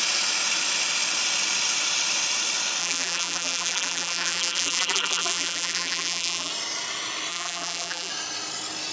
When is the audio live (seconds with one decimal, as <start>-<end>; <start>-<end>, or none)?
0.0-2.8; 6.5-7.3; 8.1-8.9